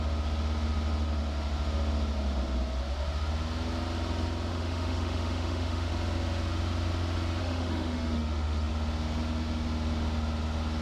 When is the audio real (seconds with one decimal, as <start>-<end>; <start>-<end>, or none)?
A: 0.0-4.5; 5.9-7.4; 8.7-10.8